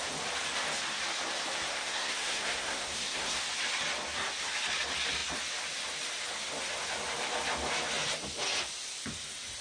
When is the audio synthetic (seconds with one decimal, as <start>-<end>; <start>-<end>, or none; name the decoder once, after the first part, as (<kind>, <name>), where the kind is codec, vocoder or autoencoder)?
1.7-3.4 (codec, SNAC)